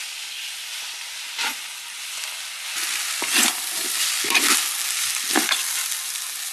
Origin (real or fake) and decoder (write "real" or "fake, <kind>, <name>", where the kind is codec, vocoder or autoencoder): real